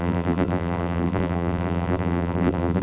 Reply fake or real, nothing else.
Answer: fake